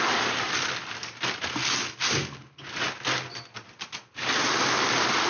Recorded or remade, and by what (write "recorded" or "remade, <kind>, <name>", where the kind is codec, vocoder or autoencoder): recorded